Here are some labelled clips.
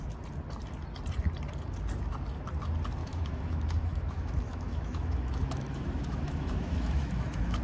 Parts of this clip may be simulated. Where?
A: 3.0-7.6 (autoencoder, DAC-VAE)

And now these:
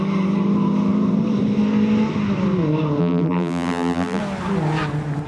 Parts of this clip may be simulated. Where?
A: 3.0-4.2 (vocoder, BigVGAN v2)

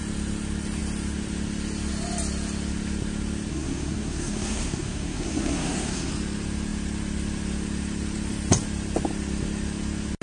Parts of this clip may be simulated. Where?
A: 3.5-6.1 (codec, SNAC)

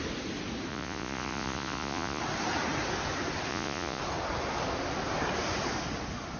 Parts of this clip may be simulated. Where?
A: 0.7-2.2 (vocoder, Vocos); 3.5-4.0

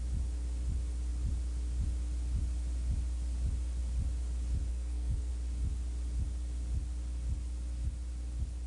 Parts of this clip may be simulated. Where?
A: 4.7-5.3 (codec, SNAC)

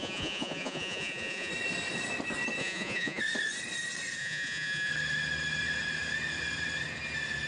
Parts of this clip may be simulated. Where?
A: 0.0-1.5 (vocoder, Vocos); 2.6-3.2; 4.2-4.9

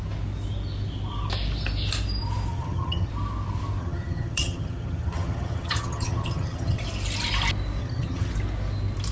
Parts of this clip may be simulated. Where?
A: 2.5-3.1 (vocoder, HiFi-GAN); 3.8-6.8; 7.8-8.3

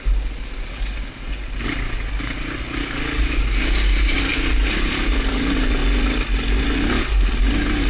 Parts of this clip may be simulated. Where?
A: none